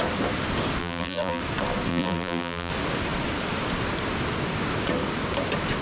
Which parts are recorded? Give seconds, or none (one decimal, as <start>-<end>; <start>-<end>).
0.0-0.8; 1.4-1.9; 2.7-5.8